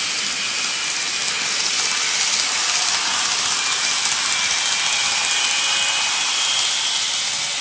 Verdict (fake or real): real